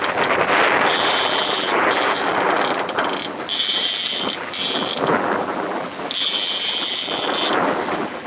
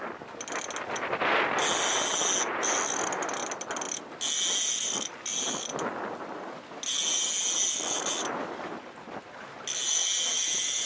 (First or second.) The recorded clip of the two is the second